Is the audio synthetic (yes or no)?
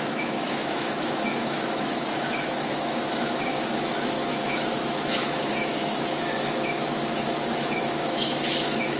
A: yes